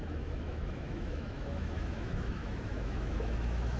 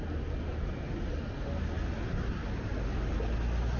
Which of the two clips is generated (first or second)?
first